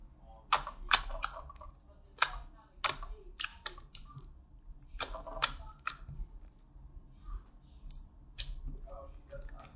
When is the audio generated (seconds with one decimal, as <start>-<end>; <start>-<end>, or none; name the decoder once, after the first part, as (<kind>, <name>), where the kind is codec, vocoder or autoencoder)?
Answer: 3.5-7.5 (vocoder, BigVGAN v2)